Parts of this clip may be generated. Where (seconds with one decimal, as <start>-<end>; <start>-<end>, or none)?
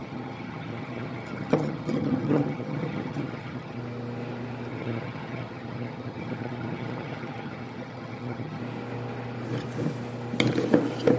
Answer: 0.0-3.8; 4.7-8.6